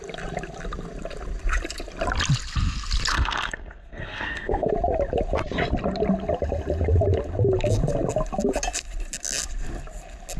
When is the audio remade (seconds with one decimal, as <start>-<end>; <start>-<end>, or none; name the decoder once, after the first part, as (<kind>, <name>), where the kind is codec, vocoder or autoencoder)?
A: 3.1-4.7 (codec, SNAC)

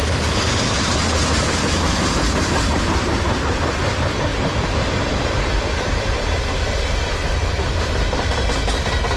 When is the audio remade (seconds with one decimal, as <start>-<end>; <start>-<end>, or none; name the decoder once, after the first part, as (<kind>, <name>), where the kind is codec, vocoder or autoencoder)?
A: 0.0-8.3 (vocoder, BigVGAN v2)

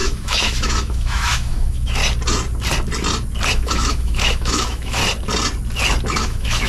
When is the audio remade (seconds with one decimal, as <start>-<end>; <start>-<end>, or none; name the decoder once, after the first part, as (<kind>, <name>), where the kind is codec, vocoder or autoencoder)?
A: 0.0-2.0 (autoencoder, DAC-VAE); 3.5-5.0; 6.2-6.7

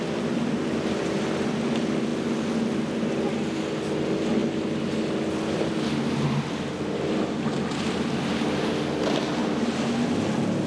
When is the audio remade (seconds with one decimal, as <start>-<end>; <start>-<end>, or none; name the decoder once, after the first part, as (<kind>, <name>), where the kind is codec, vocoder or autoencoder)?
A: none